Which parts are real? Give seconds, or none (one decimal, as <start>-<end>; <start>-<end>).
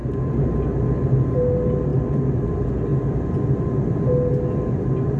0.0-5.2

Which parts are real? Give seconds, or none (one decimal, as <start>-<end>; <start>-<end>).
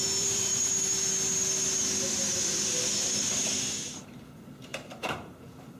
0.5-3.1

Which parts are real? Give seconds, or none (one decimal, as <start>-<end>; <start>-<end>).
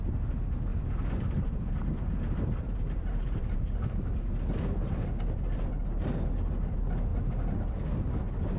0.0-0.7; 3.7-8.6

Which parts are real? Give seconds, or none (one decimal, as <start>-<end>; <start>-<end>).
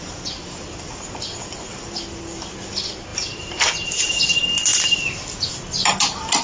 0.0-3.1; 4.0-6.4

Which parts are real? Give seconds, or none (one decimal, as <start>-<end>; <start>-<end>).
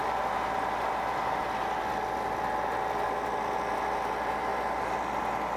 0.0-5.6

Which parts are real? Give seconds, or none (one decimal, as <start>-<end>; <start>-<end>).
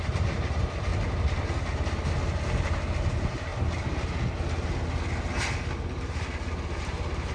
0.9-3.0; 3.5-6.8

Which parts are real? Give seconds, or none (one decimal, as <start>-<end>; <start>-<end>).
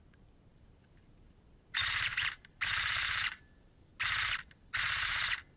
0.0-0.5; 3.9-5.6